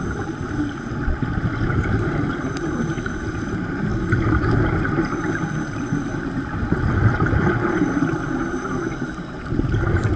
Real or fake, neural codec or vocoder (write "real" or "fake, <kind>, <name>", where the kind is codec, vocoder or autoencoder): real